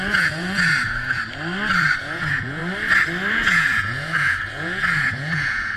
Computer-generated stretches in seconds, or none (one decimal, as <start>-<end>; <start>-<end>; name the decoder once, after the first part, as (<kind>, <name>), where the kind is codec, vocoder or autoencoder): 0.0-1.2 (vocoder, Vocos); 2.0-2.6; 3.3-5.8